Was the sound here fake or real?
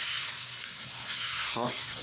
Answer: fake